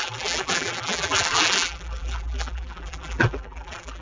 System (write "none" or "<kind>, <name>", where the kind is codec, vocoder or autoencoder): vocoder, BigVGAN v2